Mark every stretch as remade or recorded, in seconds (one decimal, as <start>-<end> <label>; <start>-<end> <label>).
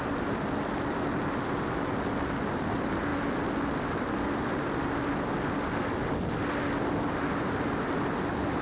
0.0-8.6 recorded